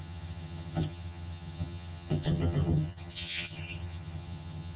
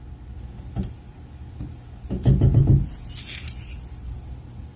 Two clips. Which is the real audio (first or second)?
second